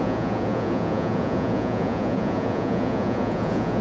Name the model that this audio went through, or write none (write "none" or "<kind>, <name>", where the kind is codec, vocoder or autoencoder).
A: vocoder, Vocos